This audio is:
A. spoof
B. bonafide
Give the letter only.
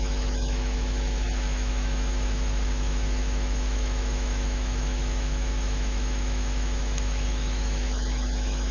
A